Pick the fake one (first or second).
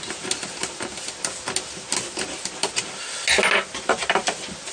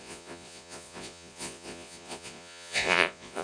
second